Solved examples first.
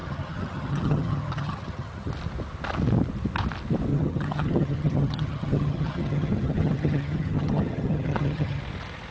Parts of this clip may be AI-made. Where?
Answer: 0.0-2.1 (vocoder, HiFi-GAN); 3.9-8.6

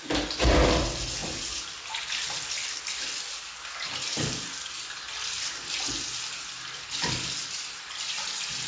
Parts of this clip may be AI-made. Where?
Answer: none

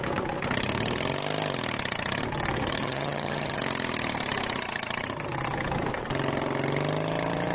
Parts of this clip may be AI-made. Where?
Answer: 2.8-3.6 (vocoder, HiFi-GAN)

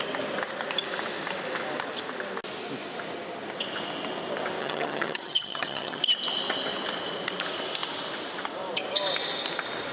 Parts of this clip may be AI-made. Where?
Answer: 4.6-6.0 (vocoder, HiFi-GAN)

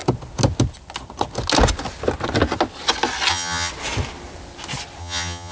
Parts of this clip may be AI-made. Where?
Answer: 3.3-3.7 (vocoder, HiFi-GAN); 5.0-5.5

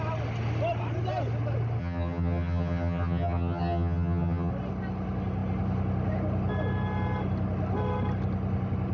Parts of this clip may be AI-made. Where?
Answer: 1.8-4.5 (vocoder, HiFi-GAN)